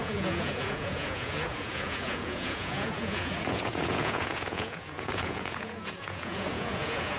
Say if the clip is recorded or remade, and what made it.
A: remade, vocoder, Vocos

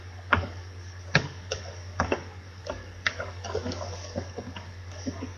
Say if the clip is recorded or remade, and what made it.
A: remade, codec, DAC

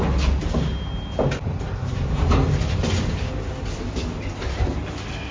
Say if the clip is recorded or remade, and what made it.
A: recorded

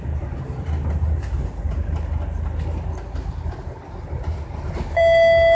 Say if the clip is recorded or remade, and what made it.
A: recorded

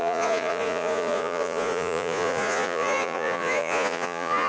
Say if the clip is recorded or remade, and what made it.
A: remade, vocoder, Vocos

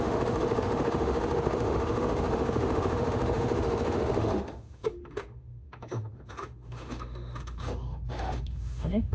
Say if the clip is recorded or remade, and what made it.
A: remade, autoencoder, DAC-VAE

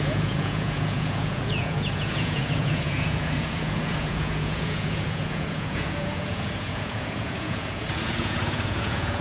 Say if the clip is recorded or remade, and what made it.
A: remade, vocoder, Vocos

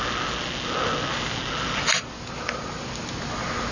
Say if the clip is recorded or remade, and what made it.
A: recorded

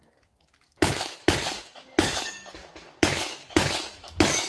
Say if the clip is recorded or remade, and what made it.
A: remade, codec, DAC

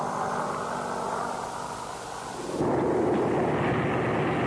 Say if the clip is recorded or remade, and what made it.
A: recorded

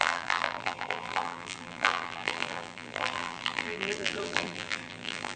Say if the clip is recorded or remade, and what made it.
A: remade, vocoder, BigVGAN v2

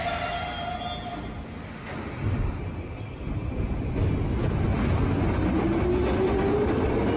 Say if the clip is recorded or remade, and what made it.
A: recorded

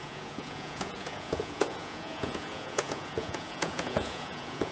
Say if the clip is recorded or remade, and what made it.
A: remade, vocoder, Vocos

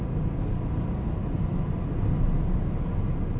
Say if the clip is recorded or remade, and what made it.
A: recorded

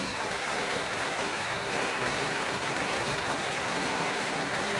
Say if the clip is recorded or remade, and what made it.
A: remade, codec, SNAC